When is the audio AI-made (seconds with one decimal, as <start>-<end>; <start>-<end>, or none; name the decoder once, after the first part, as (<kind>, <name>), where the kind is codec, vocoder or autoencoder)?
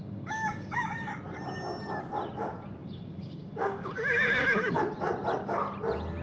0.0-1.1 (codec, DAC); 2.8-4.8